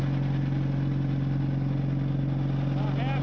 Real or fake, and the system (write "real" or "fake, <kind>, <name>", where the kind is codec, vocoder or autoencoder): real